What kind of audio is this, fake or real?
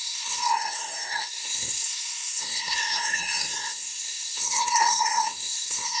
fake